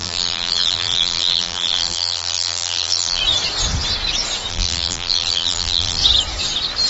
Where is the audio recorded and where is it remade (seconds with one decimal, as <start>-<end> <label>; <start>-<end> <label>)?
0.0-3.2 remade; 3.2-4.5 recorded; 4.5-6.0 remade; 6.0-6.9 recorded